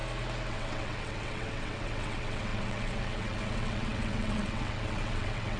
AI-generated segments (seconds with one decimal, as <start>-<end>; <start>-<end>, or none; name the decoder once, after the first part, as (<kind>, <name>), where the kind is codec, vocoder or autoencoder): 0.5-5.6 (vocoder, WaveNeXt)